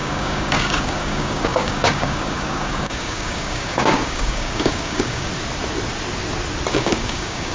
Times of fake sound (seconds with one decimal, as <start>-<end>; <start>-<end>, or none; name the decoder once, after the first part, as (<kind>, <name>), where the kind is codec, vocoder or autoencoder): 0.0-5.3 (codec, DAC); 6.7-7.5